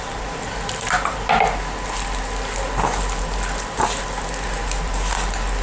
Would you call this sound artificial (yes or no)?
no